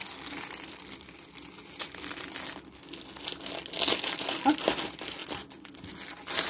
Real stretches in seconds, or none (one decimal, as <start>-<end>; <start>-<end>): 0.0-6.5